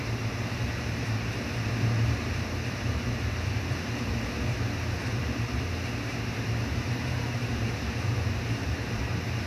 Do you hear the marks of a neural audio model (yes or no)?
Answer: yes